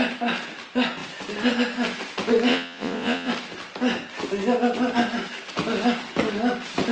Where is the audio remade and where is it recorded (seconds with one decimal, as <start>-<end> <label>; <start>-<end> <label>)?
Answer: 0.0-2.5 recorded; 2.5-3.3 remade; 3.3-6.9 recorded